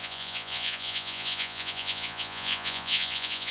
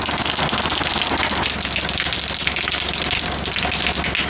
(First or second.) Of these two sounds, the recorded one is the second